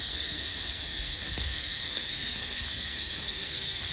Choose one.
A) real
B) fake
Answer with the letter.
B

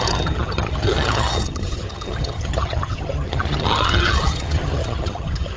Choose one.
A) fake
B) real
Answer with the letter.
A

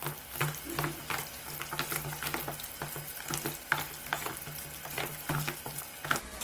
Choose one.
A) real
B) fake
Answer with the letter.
A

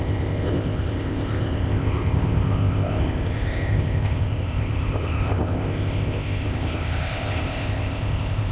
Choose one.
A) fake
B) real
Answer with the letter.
A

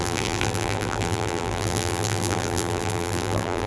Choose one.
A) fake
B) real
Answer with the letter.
A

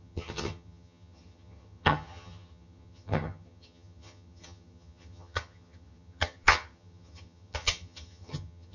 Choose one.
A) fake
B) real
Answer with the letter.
A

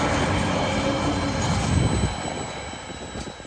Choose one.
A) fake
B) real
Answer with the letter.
B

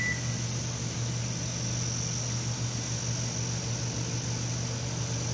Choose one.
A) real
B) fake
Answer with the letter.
A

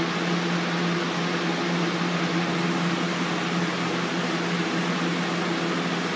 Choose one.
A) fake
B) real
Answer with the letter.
B